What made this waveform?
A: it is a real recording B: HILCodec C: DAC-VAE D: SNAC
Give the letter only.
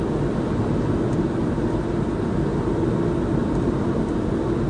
A